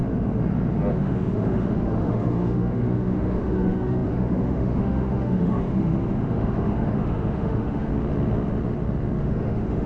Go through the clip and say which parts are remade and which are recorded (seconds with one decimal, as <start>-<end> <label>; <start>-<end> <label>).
0.0-0.9 recorded; 0.9-7.9 remade; 7.9-9.2 recorded; 9.2-9.9 remade